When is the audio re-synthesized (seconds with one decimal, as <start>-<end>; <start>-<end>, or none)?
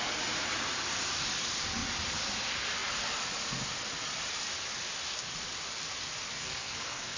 6.3-7.2